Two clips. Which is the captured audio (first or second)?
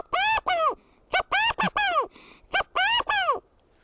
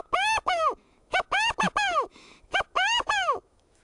first